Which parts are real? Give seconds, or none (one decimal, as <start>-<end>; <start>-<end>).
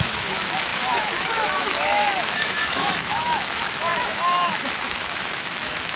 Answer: none